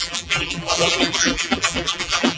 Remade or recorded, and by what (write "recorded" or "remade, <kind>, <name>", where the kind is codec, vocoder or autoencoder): remade, vocoder, BigVGAN v2